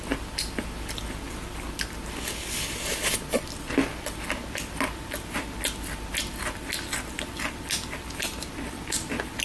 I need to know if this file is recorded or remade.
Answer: recorded